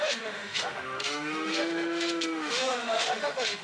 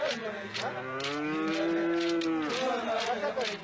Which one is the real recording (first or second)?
second